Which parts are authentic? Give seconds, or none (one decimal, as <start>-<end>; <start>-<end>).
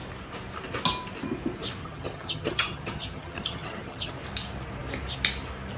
0.0-1.8; 4.1-5.8